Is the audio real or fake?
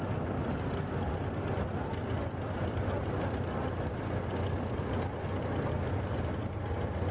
real